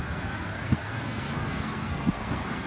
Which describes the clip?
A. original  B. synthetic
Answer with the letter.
B